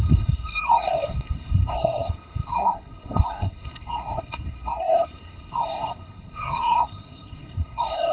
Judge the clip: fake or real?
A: fake